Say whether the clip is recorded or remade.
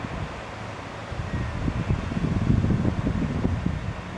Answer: recorded